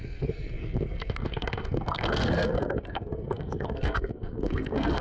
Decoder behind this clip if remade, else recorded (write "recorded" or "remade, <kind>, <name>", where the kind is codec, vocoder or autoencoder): remade, codec, SNAC